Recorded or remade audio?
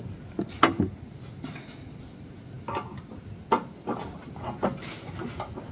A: recorded